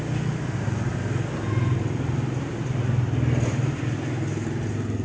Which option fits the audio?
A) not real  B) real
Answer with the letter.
B